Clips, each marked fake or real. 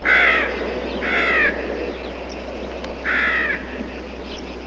real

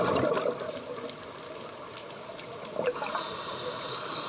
real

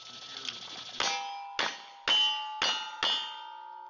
real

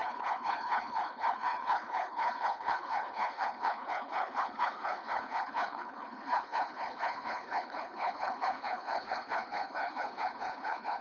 fake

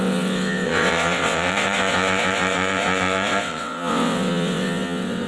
fake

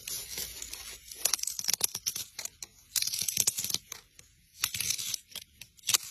real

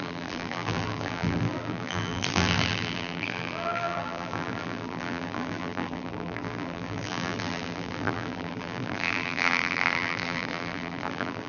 fake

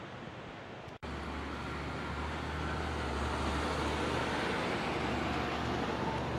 real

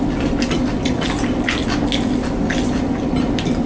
real